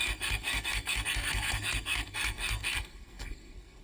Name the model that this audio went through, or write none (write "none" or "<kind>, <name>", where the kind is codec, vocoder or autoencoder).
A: codec, SNAC